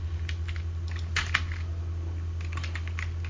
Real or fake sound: real